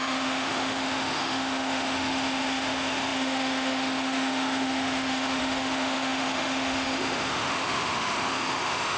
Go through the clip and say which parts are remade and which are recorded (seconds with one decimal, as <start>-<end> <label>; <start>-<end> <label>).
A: 0.0-9.0 remade